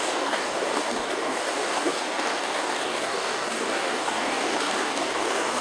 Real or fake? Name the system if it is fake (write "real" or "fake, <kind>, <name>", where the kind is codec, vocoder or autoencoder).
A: fake, codec, DAC